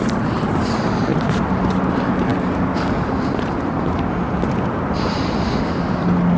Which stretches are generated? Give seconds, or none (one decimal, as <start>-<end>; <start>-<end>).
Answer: none